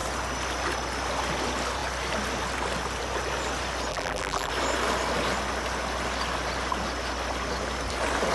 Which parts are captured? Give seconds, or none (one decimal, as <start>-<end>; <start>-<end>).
0.0-3.9; 4.5-8.3